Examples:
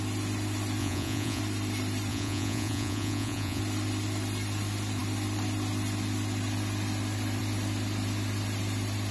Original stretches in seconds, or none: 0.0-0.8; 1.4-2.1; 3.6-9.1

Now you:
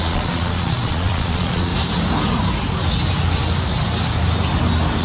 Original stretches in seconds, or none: 1.7-5.0

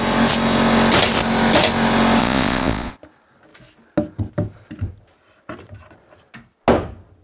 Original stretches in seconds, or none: 0.0-2.2; 2.9-7.2

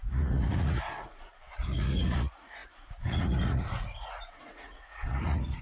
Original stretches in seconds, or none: none